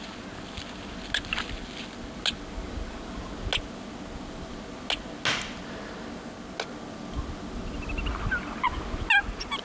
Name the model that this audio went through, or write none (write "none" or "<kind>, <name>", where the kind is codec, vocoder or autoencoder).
none